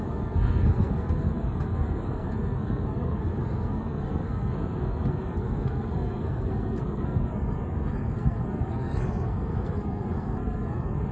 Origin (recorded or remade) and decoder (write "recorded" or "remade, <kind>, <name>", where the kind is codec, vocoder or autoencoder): remade, codec, SNAC